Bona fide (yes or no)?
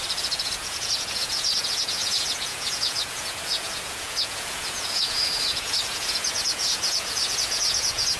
no